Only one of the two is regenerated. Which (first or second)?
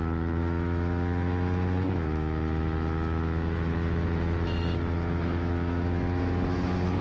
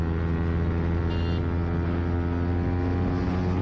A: first